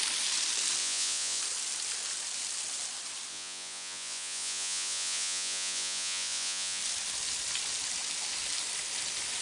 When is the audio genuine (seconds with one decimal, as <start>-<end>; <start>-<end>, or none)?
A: 0.0-0.8; 1.4-3.3; 6.8-9.4

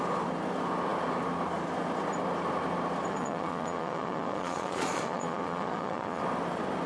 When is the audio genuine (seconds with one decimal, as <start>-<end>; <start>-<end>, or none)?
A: 0.0-3.1; 6.2-6.9

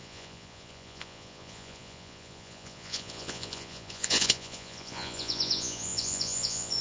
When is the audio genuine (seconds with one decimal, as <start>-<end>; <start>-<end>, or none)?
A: none

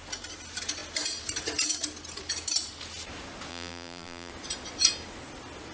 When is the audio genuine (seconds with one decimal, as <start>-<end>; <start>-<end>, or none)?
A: 0.0-3.5; 4.3-5.7

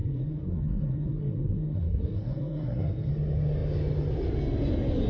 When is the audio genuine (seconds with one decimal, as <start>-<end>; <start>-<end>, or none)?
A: 3.1-5.1

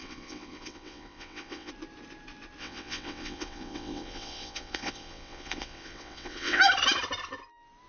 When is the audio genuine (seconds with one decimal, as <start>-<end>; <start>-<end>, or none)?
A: 1.7-2.6; 6.6-7.9

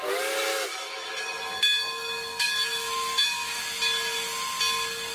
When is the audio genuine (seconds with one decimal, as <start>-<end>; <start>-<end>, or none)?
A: 0.0-0.5; 3.6-5.1